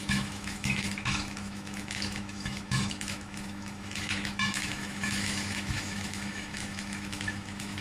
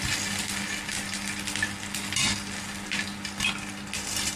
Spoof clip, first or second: first